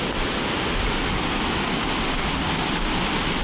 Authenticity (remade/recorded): recorded